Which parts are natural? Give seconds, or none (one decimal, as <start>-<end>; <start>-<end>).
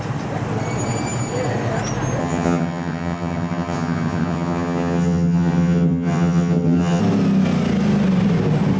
0.0-2.2; 7.0-8.8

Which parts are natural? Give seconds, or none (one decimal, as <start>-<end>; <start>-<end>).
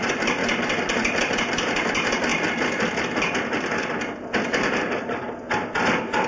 0.4-1.2; 2.3-6.3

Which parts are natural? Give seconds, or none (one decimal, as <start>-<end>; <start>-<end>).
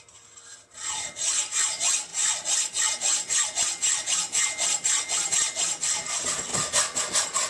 0.0-7.5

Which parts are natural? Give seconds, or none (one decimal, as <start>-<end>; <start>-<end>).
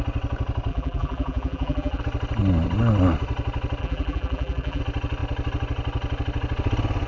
0.0-0.7; 2.0-3.8; 4.8-7.1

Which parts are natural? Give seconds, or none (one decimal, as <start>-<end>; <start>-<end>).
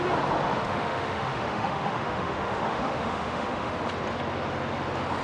0.0-0.6; 3.7-5.2